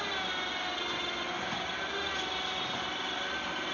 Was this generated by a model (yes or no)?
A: no